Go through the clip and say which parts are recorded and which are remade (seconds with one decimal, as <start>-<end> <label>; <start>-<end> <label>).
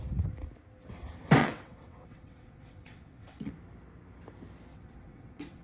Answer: 0.0-1.4 recorded; 1.4-3.5 remade; 3.5-4.7 recorded; 4.7-5.6 remade